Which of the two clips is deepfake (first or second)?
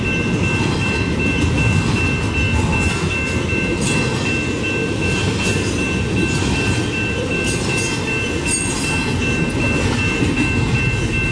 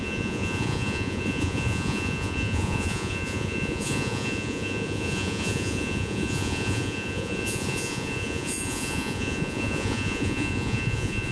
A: second